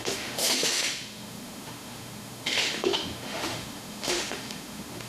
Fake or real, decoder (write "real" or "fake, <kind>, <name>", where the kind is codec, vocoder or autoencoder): fake, autoencoder, DAC-VAE